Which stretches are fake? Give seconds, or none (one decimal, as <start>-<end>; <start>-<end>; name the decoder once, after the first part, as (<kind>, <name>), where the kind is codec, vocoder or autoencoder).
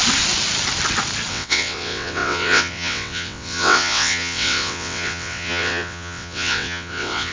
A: 1.3-7.3 (vocoder, WaveNeXt)